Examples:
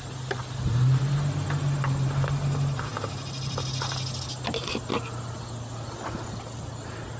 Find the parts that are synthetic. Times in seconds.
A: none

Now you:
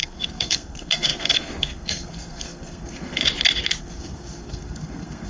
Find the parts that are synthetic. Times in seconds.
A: 0.0-3.2 (codec, SNAC); 3.8-5.3

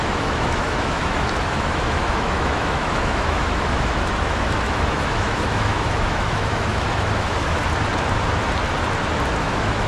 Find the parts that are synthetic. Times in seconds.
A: 0.0-7.6 (autoencoder, DAC-VAE); 9.4-9.9

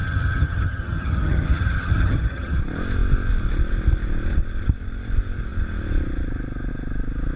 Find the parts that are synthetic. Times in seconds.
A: 0.0-2.6 (vocoder, HiFi-GAN)

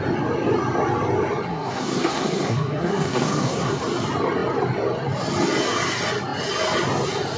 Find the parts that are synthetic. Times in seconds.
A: 1.5-3.8 (codec, SNAC)